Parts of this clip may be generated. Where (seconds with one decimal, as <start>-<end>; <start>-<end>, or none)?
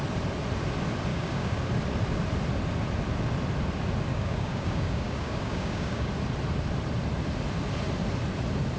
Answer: 1.1-1.6; 4.1-6.1